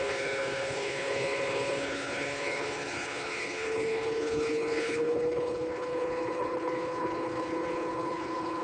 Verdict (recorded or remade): remade